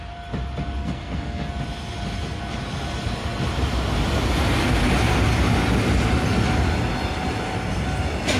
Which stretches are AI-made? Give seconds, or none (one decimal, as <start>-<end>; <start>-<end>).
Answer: 0.8-1.5